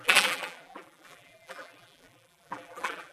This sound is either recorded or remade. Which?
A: remade